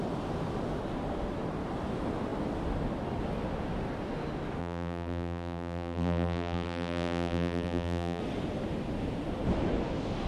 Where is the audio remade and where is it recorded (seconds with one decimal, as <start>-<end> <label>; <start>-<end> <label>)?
0.0-4.6 recorded; 4.6-8.2 remade; 8.2-10.3 recorded